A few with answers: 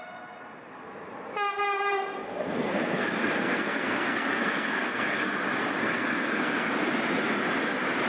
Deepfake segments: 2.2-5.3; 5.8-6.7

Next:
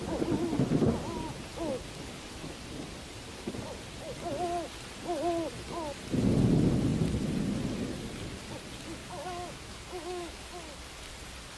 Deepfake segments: 9.0-10.4

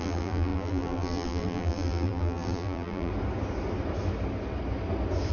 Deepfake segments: 0.0-3.1

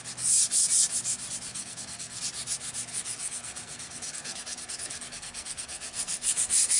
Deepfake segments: 1.5-2.2; 2.9-6.8

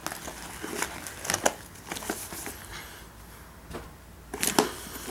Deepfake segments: none